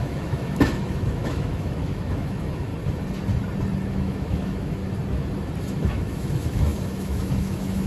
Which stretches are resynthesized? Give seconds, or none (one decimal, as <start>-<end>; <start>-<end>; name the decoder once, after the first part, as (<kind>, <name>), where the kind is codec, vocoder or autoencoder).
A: 0.0-2.7 (autoencoder, DAC-VAE); 3.9-4.8; 5.7-7.9